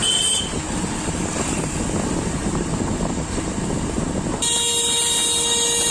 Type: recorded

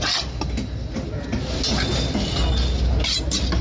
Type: recorded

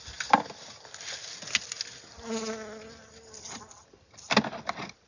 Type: recorded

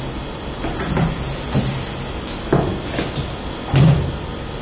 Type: recorded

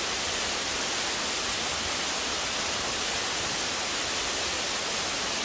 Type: recorded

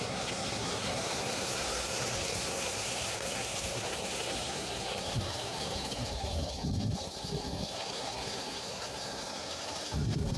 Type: remade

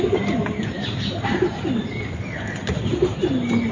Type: recorded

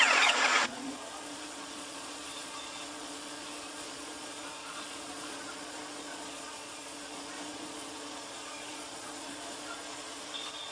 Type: remade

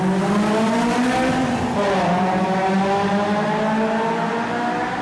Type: recorded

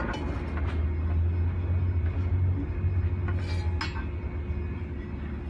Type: recorded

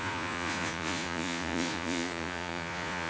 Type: remade